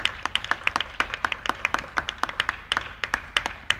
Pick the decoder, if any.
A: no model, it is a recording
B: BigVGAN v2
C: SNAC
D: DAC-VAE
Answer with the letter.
B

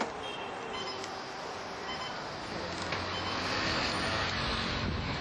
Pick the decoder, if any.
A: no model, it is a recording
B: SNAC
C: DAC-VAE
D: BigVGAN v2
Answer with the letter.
A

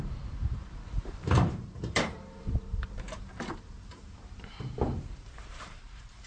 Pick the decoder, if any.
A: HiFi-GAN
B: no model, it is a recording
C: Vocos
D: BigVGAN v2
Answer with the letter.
D